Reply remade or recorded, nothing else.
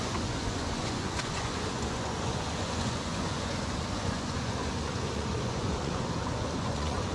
remade